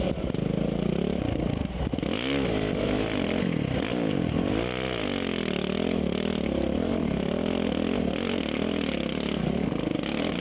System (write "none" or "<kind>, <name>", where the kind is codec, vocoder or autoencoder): none